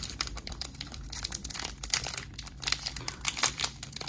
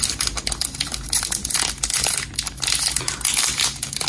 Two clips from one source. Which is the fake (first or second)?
first